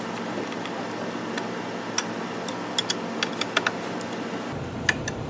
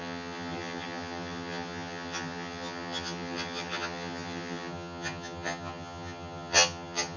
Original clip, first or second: first